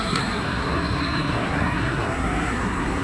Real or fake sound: fake